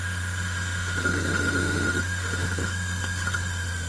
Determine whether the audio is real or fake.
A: fake